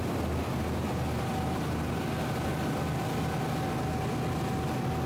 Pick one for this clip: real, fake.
real